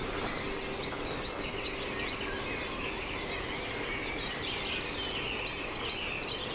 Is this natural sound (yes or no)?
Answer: yes